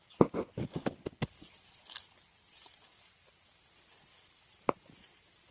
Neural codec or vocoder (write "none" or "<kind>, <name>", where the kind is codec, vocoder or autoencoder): none